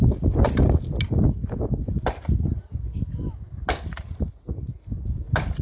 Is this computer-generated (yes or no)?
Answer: no